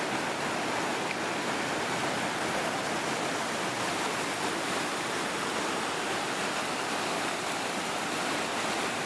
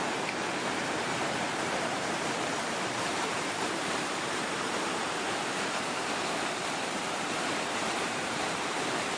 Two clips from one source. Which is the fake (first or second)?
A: second